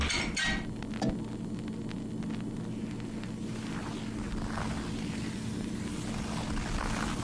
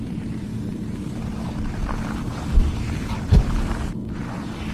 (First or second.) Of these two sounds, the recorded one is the first